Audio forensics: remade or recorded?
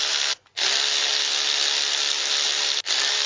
recorded